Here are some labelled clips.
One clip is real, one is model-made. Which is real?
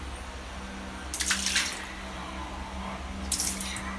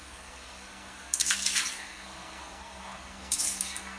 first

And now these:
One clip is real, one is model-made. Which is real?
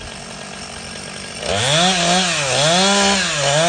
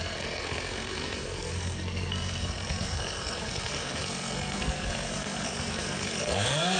first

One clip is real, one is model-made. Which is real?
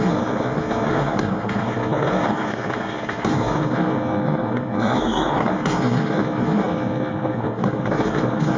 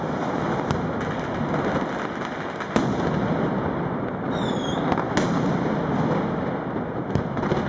second